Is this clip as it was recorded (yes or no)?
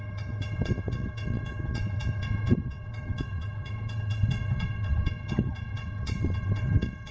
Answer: no